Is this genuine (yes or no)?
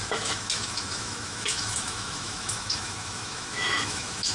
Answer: no